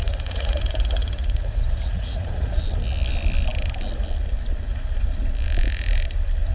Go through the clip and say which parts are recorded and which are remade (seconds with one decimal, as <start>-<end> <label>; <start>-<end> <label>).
0.0-2.6 remade; 2.6-6.5 recorded